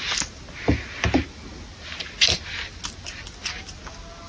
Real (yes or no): yes